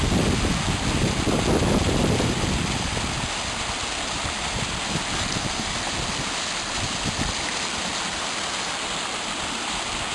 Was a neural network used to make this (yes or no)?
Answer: no